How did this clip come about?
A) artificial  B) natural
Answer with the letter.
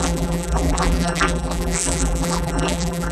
A